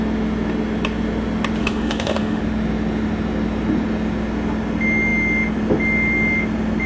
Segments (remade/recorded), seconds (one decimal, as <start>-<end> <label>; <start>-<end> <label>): 0.0-1.6 recorded; 1.6-2.4 remade; 2.4-6.9 recorded